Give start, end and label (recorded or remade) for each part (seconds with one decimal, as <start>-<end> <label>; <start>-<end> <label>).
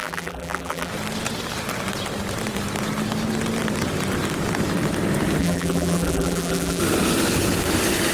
0.0-0.9 remade; 0.9-5.4 recorded; 5.4-6.8 remade; 6.8-8.1 recorded